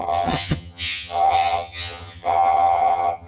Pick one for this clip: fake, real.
fake